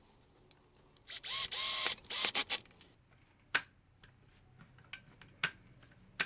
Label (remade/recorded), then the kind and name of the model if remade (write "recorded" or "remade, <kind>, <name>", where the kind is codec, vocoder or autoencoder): recorded